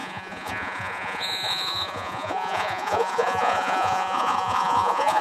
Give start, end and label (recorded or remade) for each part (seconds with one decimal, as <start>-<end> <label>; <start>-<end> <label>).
0.0-5.2 remade